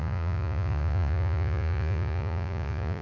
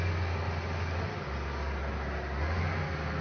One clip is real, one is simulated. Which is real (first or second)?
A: second